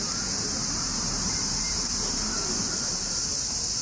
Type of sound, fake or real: fake